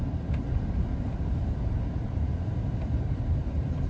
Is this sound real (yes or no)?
no